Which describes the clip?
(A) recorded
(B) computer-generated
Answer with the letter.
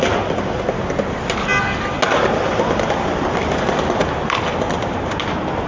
A